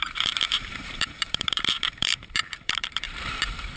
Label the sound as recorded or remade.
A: remade